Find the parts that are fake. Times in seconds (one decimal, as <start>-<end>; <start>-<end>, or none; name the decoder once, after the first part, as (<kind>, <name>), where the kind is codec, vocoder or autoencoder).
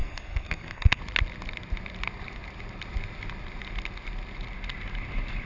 0.0-1.0 (codec, SNAC)